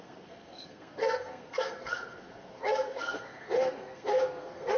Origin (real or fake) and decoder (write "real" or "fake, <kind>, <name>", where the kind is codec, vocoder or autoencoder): fake, codec, SNAC